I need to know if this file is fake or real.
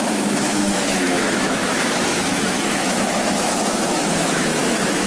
fake